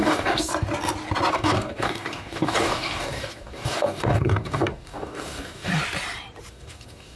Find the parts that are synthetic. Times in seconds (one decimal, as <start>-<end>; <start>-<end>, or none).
0.0-0.5; 1.3-5.7; 6.5-7.2